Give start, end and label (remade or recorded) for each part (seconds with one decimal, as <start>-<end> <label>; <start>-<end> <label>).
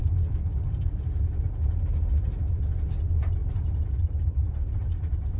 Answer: 0.0-5.4 recorded